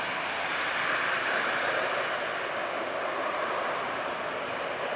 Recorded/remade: recorded